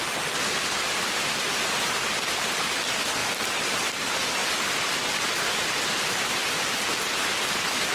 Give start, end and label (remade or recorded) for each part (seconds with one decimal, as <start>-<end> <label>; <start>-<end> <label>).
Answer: 0.0-3.2 recorded; 3.2-3.9 remade; 3.9-4.4 recorded; 4.4-6.7 remade; 6.7-7.9 recorded